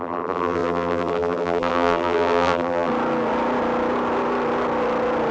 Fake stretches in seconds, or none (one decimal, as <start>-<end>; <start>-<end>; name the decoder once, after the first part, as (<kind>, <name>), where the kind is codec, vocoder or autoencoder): 0.0-2.9 (vocoder, BigVGAN v2)